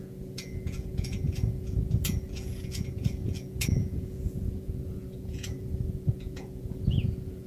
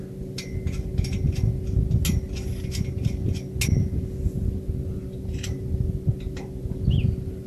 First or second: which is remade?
first